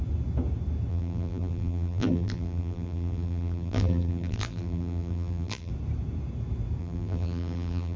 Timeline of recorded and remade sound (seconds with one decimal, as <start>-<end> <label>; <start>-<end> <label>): 0.0-0.9 recorded; 0.9-5.7 remade; 5.7-6.8 recorded; 6.8-8.0 remade